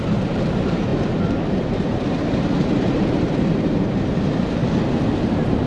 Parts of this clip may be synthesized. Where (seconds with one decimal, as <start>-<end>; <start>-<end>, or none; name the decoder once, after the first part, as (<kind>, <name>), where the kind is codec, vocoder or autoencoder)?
0.0-4.6 (vocoder, BigVGAN v2); 5.2-5.7